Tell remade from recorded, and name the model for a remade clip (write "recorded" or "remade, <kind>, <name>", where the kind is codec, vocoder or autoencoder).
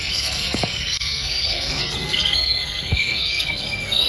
remade, codec, SNAC